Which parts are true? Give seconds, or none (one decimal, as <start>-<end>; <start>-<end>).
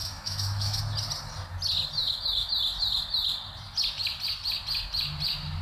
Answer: 0.8-2.0; 2.5-5.6